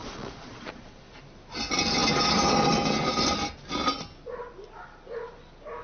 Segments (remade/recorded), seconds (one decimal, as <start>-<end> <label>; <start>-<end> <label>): 0.0-1.2 remade; 1.2-5.8 recorded